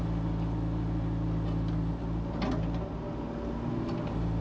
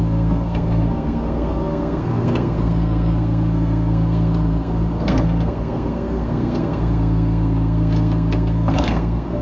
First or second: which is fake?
second